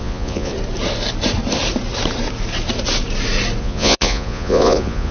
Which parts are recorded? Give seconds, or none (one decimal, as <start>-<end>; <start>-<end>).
0.5-3.6